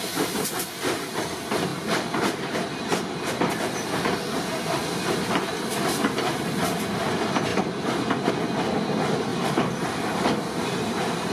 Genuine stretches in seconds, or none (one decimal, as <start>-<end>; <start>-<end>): 0.0-7.5; 8.3-9.3; 10.0-11.3